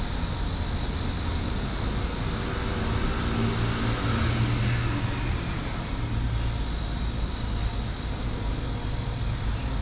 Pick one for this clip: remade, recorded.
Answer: recorded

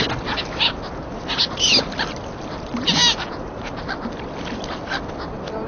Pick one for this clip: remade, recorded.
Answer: recorded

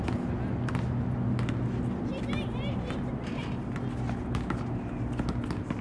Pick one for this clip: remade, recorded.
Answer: recorded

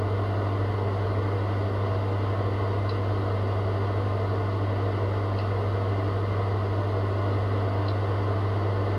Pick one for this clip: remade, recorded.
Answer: recorded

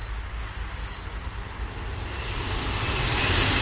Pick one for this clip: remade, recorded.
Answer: recorded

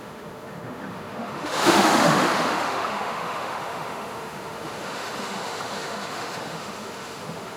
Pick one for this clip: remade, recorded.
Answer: remade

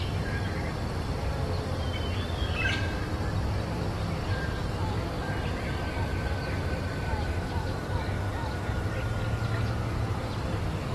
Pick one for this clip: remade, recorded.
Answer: recorded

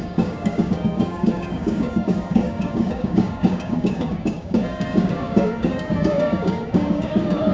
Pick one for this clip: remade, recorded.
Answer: remade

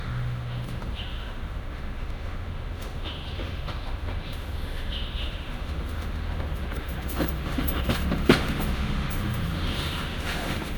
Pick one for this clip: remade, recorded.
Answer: remade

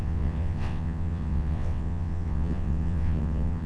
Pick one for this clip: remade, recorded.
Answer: remade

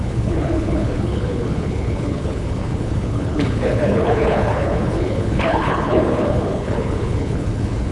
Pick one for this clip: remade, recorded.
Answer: remade